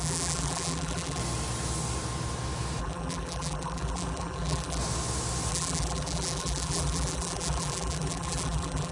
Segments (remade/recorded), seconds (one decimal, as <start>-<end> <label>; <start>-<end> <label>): 0.0-1.2 remade; 1.2-2.8 recorded; 2.8-4.8 remade; 4.8-5.5 recorded; 5.5-8.9 remade